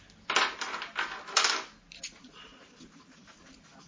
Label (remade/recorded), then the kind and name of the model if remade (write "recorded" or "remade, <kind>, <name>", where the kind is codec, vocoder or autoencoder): recorded